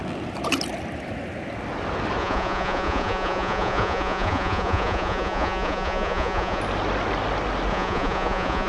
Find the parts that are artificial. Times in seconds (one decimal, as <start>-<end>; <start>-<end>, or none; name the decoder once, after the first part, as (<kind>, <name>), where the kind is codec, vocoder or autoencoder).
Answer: 2.2-6.6 (vocoder, Vocos); 7.7-8.7